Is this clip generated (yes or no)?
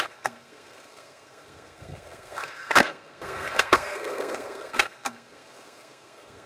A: yes